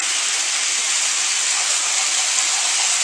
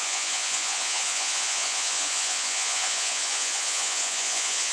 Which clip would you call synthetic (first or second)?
second